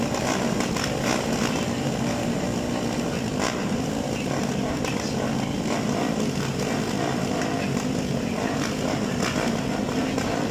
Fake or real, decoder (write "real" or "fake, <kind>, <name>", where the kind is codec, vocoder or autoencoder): real